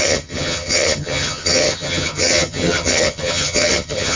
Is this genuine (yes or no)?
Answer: no